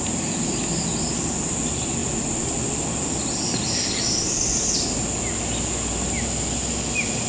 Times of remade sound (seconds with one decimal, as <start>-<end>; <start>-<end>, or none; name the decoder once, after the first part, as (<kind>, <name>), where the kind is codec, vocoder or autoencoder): none